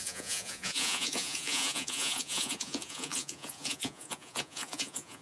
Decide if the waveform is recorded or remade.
remade